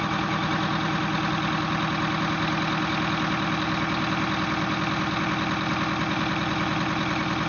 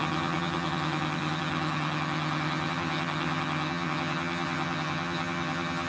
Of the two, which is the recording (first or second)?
first